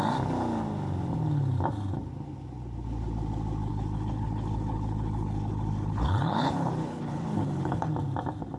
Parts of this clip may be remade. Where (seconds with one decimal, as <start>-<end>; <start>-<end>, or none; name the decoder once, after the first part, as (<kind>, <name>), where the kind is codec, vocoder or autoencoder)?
3.7-7.9 (codec, HILCodec)